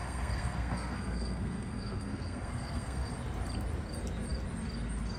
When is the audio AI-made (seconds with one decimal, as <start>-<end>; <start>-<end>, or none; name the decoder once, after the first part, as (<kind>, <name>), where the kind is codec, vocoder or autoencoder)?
0.0-3.1 (codec, SNAC)